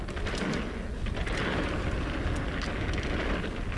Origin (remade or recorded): recorded